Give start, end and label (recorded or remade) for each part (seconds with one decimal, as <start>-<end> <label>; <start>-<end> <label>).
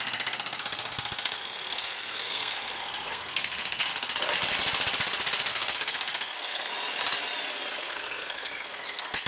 0.0-3.9 remade; 3.9-5.5 recorded; 5.5-6.7 remade; 6.7-7.8 recorded; 7.8-9.3 remade